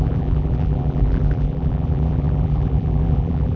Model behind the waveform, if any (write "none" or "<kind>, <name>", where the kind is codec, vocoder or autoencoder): vocoder, BigVGAN v2